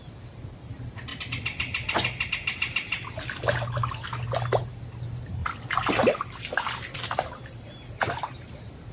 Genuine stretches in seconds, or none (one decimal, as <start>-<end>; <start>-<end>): 0.0-8.9